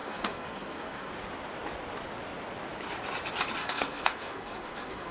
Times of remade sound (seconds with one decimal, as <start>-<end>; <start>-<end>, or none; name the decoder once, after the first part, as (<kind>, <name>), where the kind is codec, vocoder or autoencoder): 0.0-1.1 (codec, SNAC); 3.6-5.1